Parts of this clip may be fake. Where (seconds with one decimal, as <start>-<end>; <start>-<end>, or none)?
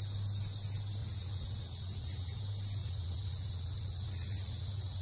1.0-2.4; 2.8-5.0